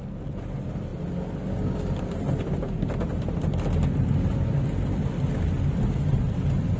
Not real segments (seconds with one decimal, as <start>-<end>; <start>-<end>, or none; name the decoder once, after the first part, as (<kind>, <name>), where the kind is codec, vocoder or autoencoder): none

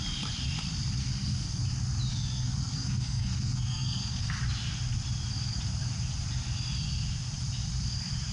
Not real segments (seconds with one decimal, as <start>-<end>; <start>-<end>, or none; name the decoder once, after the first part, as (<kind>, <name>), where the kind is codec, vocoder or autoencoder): 1.0-1.6 (codec, SNAC); 2.1-4.4

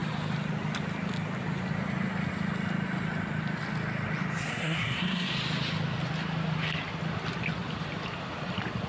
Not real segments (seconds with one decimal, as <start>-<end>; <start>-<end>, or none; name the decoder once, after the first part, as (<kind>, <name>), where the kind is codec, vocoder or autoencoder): 4.5-5.3 (codec, SNAC)

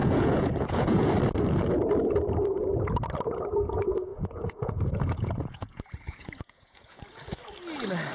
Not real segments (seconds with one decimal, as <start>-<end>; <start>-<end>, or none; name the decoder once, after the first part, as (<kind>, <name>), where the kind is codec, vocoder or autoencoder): 0.0-1.1 (vocoder, Vocos); 4.1-7.0

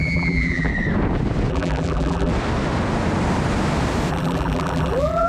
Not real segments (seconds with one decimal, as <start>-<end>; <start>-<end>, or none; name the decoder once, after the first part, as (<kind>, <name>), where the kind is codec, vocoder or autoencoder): 0.0-0.7 (vocoder, BigVGAN v2); 1.5-2.3; 4.1-5.3

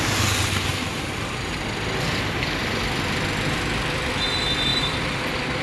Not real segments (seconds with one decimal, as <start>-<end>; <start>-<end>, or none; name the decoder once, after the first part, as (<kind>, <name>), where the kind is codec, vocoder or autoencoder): 0.7-4.1 (vocoder, BigVGAN v2); 4.7-5.6